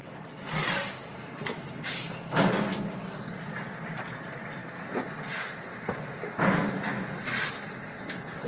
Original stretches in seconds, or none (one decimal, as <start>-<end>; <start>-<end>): 0.0-8.5